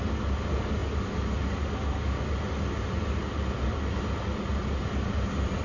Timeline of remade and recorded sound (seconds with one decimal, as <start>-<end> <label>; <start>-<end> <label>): 0.0-5.6 recorded